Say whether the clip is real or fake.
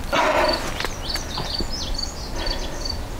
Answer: real